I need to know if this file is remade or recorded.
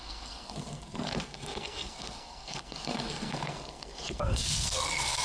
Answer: remade